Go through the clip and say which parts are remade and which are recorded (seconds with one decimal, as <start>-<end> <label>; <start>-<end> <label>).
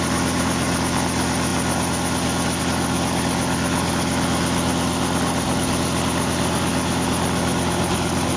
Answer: 0.0-8.4 recorded